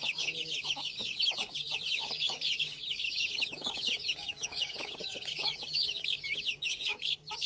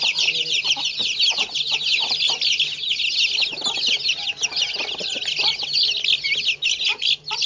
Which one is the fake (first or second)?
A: first